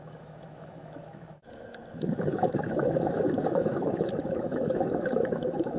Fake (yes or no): yes